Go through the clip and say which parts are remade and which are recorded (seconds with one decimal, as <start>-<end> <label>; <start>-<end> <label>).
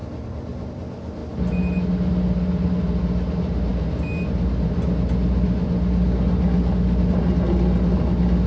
0.0-0.7 remade; 0.7-8.5 recorded